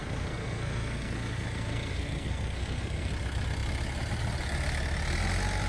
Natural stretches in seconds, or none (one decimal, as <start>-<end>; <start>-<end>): 3.1-5.7